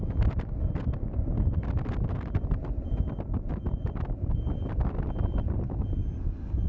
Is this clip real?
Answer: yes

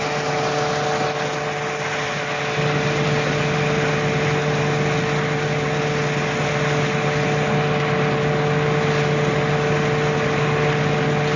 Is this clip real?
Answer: yes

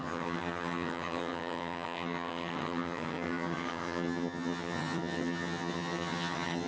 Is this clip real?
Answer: no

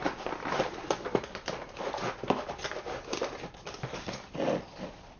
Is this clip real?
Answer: yes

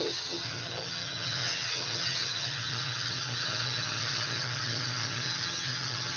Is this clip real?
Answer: no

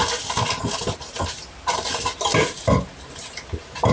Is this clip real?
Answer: yes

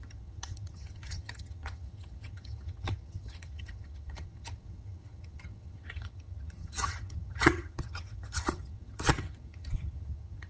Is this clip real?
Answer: no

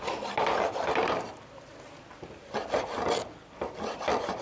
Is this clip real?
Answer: yes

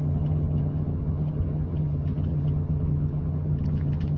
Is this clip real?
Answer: no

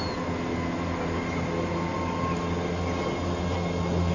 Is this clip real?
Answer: yes